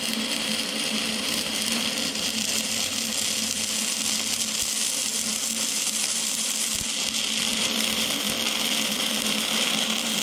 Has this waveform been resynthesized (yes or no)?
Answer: yes